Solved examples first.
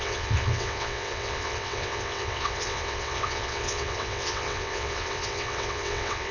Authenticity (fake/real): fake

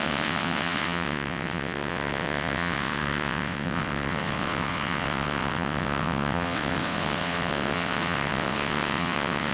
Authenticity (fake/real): fake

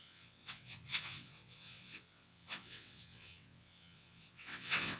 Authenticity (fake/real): fake